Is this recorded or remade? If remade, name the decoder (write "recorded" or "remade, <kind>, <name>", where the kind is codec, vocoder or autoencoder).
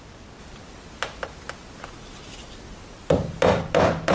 recorded